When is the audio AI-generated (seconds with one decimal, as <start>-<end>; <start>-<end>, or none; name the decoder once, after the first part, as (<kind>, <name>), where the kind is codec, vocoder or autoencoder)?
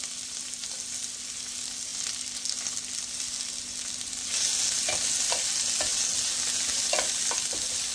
none